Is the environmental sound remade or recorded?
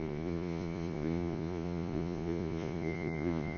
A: remade